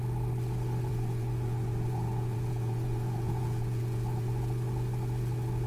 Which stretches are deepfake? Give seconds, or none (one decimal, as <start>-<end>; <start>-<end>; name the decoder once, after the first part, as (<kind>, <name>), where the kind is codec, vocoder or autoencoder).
0.9-4.3 (vocoder, Vocos)